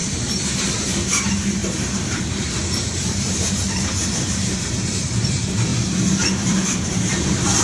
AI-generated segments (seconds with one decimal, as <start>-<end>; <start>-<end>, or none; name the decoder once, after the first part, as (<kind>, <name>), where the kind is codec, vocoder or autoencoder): 0.0-7.6 (vocoder, BigVGAN v2)

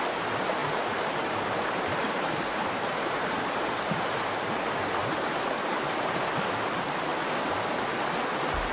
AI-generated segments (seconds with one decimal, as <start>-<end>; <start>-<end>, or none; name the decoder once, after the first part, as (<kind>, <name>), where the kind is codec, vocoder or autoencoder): 0.6-3.5 (vocoder, BigVGAN v2); 5.0-6.2

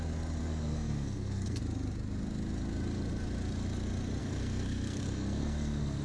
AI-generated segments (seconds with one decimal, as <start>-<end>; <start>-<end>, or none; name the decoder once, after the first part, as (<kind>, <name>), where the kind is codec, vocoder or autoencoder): 0.4-1.6 (codec, SNAC); 4.2-6.0

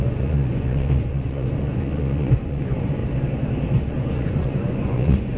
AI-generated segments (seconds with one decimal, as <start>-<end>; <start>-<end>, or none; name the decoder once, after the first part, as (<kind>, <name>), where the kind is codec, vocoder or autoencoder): 0.0-3.0 (vocoder, Vocos); 3.8-5.4